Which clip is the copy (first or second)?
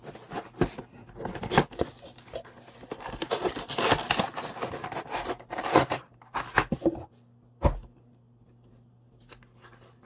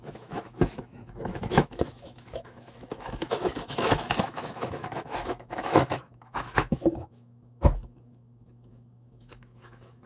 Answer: second